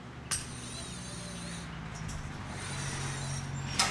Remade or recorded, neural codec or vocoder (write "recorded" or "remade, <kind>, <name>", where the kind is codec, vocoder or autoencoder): recorded